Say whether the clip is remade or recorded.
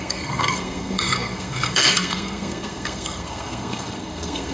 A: remade